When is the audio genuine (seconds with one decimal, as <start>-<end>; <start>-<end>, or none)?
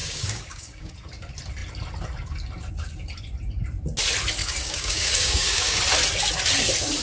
0.9-4.4; 5.8-7.0